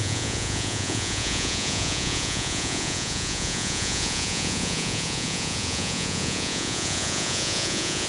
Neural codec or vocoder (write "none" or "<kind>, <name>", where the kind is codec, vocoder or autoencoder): vocoder, Vocos